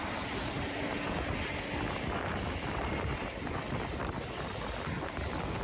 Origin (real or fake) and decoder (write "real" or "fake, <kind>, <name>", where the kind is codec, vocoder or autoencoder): real